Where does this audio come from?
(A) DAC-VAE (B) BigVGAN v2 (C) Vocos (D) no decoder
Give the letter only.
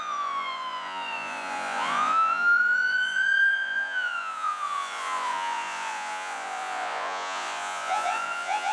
C